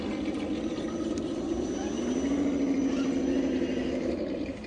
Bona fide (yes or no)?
yes